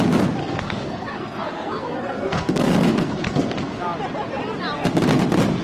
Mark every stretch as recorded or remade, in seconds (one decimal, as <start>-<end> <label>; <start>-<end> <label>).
0.0-0.4 recorded; 0.4-3.8 remade; 3.8-5.6 recorded